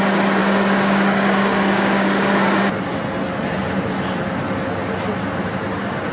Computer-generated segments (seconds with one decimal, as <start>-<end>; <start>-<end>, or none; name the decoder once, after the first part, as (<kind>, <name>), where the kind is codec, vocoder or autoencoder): 0.4-2.3 (codec, DAC)